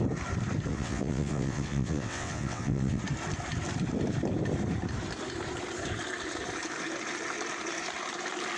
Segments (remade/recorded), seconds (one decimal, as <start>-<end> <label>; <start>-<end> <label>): 0.0-0.7 recorded; 0.7-3.0 remade; 3.0-8.6 recorded